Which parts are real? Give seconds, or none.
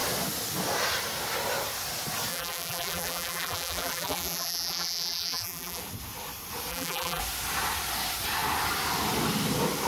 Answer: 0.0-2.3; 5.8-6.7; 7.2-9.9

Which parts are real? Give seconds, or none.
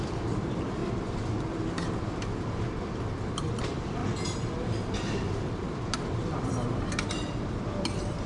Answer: 0.8-2.9; 4.0-6.3